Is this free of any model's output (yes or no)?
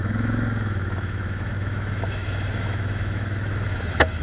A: no